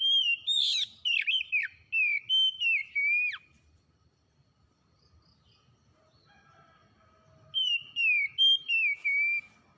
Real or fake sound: real